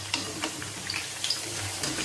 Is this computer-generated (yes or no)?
yes